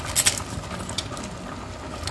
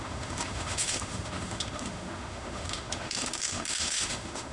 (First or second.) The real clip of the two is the first